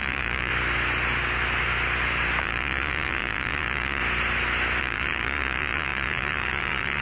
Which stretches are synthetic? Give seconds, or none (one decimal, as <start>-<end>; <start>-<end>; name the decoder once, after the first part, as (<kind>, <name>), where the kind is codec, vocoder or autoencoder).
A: 0.0-0.5 (vocoder, Vocos); 2.4-4.0; 4.8-7.0